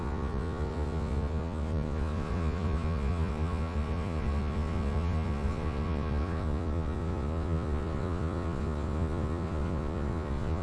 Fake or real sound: fake